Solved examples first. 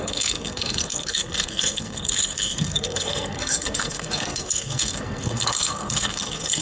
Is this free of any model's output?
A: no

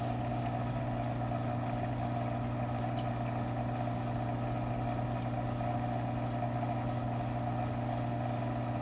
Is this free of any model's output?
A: yes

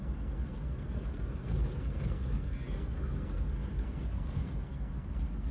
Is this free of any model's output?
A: no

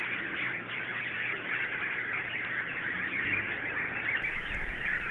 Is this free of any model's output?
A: yes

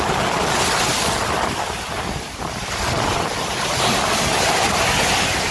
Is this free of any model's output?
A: yes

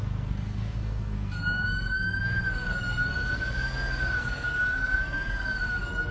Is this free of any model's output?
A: no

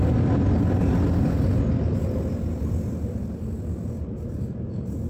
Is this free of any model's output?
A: yes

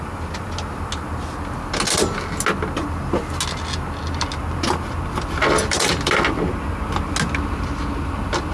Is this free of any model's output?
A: yes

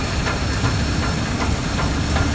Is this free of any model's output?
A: yes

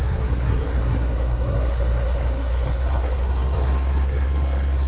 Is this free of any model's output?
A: no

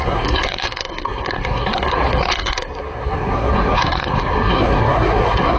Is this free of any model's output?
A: no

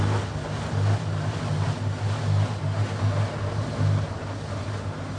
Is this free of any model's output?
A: yes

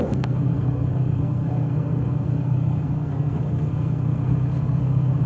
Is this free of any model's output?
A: no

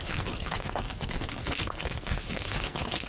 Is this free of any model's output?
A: no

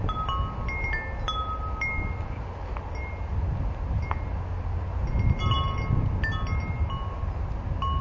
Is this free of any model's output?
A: yes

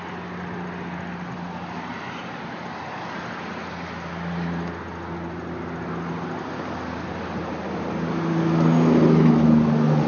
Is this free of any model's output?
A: yes